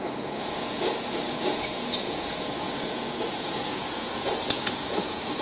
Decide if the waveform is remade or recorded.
remade